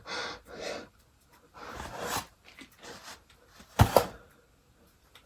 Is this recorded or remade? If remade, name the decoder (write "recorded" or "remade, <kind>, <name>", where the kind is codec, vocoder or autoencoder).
recorded